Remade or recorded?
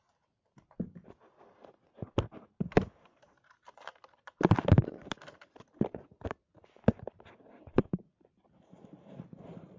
remade